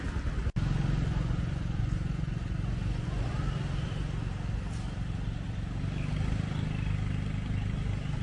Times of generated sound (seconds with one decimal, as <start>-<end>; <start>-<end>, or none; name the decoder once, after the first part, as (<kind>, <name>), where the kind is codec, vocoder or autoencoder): 1.1-3.4 (vocoder, Vocos)